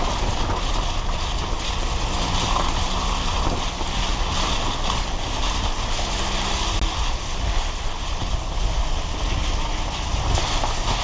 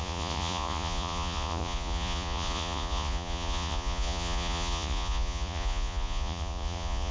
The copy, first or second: second